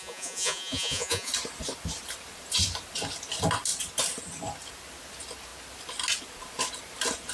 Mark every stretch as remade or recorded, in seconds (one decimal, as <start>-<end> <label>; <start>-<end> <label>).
0.0-1.3 remade; 1.3-7.3 recorded